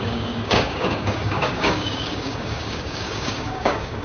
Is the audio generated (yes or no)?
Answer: yes